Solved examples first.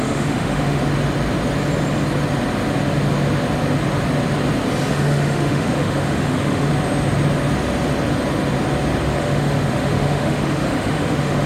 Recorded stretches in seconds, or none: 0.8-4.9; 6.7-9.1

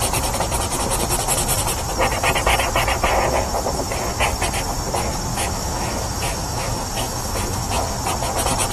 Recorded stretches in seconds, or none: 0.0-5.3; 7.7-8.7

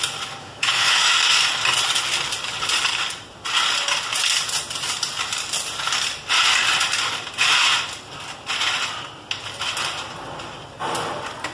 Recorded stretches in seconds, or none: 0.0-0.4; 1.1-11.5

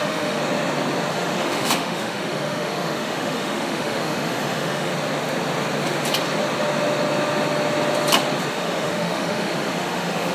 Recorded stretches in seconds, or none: 0.4-1.1; 4.9-8.5

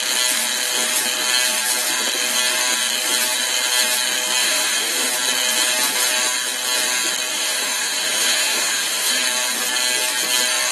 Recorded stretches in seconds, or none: 0.0-4.4; 5.1-7.3; 9.2-10.7

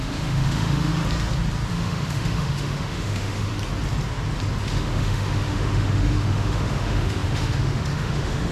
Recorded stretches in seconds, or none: 0.9-1.7; 3.5-4.6

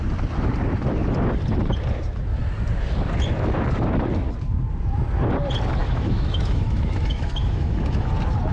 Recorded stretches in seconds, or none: 0.0-5.8; 8.1-8.5